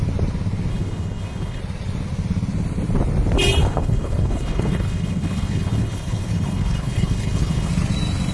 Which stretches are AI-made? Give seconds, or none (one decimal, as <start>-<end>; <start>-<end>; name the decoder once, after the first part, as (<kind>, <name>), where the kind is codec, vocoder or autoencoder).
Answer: 0.7-1.6 (codec, HILCodec); 3.6-7.7